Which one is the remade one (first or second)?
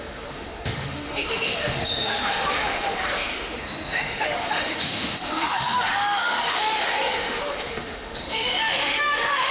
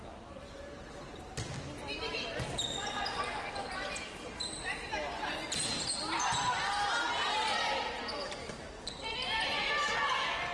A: first